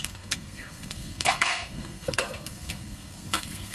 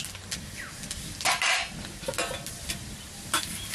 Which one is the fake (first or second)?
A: first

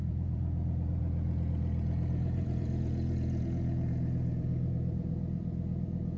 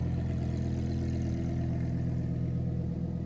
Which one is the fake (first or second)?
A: first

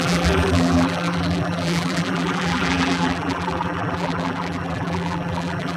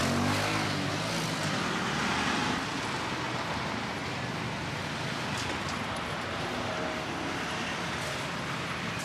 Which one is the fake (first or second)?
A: first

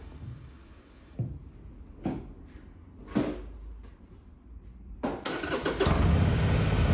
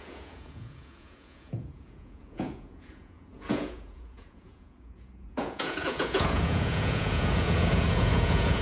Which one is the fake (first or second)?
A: second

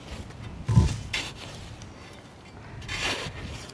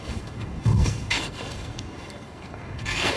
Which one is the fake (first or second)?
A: second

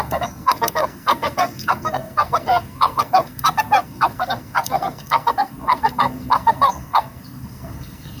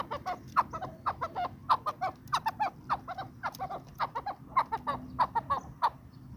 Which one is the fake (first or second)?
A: first